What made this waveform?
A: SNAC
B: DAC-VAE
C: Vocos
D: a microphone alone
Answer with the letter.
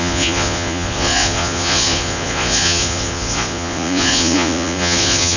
C